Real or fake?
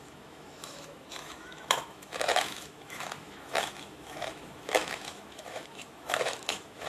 fake